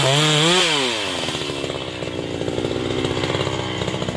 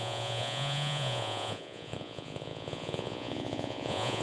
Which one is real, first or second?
first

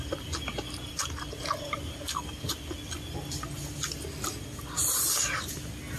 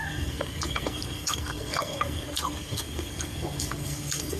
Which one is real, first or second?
first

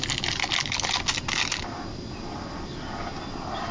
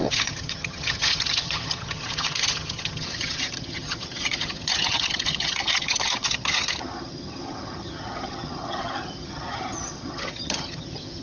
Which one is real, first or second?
first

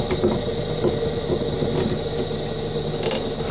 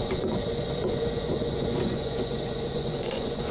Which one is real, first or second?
first